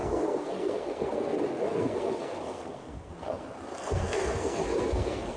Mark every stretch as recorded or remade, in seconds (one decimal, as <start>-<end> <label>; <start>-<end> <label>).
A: 0.0-5.4 remade